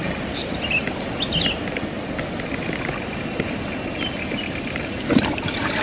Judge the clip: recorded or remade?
recorded